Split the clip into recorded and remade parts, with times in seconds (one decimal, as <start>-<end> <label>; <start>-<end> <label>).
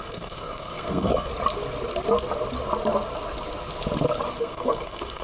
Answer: 0.0-1.3 remade; 1.3-4.4 recorded; 4.4-5.2 remade